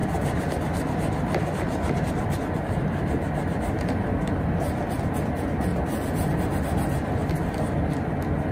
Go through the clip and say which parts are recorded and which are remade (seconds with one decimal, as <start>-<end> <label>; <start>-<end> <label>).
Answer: 0.0-4.3 remade; 4.3-5.7 recorded; 5.7-6.4 remade; 6.4-8.5 recorded